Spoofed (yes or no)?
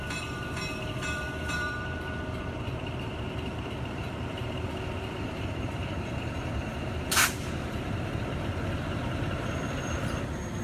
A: yes